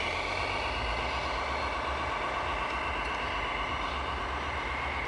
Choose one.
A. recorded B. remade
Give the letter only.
A